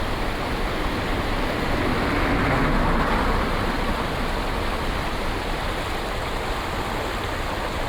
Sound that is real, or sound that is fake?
real